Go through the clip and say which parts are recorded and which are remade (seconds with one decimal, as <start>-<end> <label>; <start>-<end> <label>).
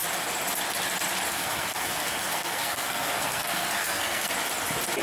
0.0-1.3 recorded; 1.3-4.3 remade; 4.3-5.0 recorded